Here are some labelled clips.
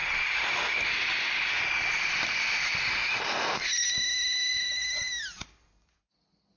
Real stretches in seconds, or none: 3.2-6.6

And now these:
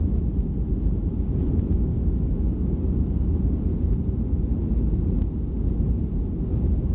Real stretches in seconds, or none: 0.0-0.7; 2.6-3.9; 4.6-6.3